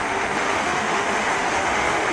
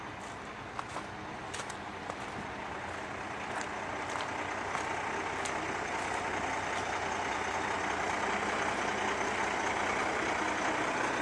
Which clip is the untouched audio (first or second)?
second